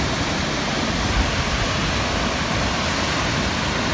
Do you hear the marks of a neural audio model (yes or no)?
no